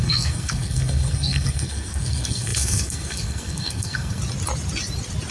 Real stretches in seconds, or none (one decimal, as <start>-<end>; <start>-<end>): 4.2-5.3